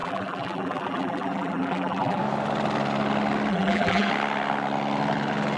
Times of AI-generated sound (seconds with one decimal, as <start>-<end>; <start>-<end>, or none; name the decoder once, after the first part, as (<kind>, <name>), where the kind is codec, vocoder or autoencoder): 0.0-2.2 (vocoder, BigVGAN v2); 3.5-4.1